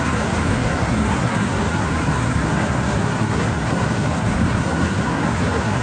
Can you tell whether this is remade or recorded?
remade